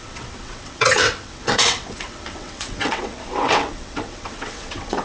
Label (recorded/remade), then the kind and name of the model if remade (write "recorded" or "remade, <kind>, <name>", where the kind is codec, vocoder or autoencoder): remade, vocoder, WaveNeXt